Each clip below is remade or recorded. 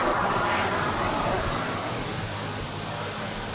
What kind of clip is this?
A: recorded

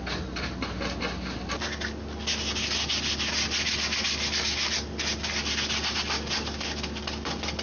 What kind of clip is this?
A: recorded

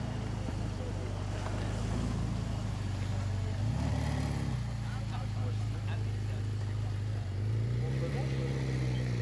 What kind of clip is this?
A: recorded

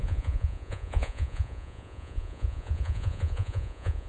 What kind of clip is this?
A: remade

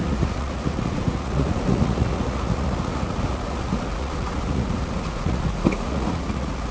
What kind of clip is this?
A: remade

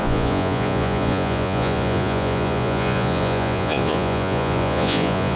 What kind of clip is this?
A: remade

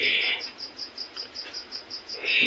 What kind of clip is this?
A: remade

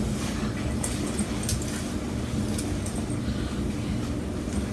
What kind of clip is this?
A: recorded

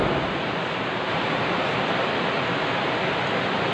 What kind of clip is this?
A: recorded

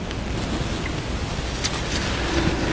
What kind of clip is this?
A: recorded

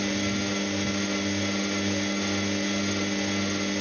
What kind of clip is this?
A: recorded